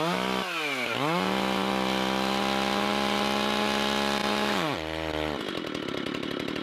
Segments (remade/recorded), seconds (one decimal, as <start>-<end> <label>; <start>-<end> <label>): 0.0-6.6 recorded